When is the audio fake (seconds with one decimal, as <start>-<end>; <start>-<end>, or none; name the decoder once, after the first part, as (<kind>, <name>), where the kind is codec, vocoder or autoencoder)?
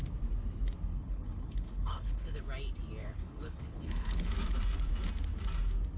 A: 0.9-2.4 (codec, HILCodec); 3.0-4.3